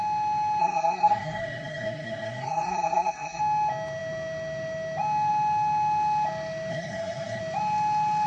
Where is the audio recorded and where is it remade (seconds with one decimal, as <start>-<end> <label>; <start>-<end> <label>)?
0.0-0.6 recorded; 0.6-3.4 remade; 3.4-6.7 recorded; 6.7-7.4 remade; 7.4-8.3 recorded